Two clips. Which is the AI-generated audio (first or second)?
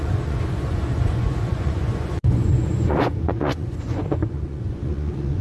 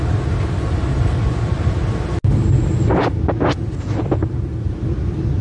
first